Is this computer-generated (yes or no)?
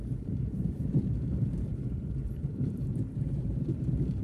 yes